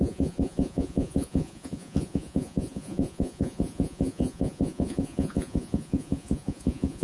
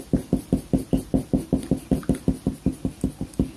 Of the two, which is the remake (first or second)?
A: first